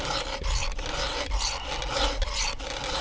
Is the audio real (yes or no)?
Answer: yes